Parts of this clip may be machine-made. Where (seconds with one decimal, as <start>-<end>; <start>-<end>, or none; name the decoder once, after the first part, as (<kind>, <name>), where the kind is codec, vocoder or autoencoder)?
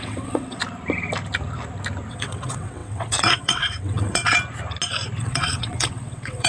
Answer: 0.0-0.6 (vocoder, WaveNeXt); 2.1-4.2; 5.2-6.5